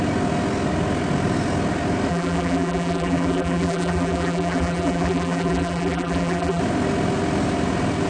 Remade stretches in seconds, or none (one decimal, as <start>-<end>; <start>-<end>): 2.1-6.6